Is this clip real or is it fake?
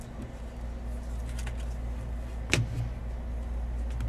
real